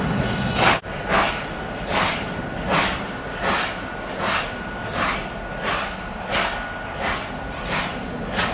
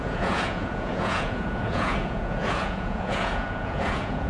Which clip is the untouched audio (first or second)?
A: first